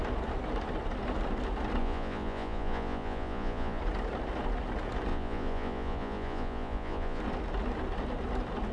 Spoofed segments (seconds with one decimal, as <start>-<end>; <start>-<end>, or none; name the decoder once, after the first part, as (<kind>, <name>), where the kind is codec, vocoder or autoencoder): 1.8-3.8 (vocoder, Vocos); 5.1-7.2